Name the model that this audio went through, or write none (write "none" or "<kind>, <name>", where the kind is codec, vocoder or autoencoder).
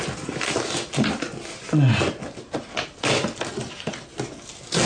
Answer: none